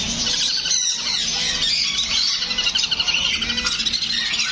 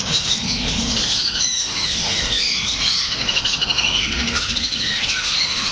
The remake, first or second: second